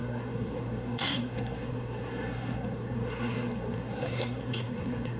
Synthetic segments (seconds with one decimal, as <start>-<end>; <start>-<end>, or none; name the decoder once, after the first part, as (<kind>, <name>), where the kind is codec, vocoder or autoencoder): 0.0-5.2 (codec, SNAC)